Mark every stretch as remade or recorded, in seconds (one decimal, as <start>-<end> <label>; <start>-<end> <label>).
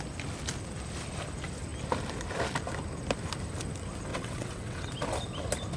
0.0-4.1 recorded; 4.1-4.9 remade; 4.9-5.8 recorded